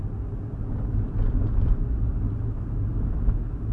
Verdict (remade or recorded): recorded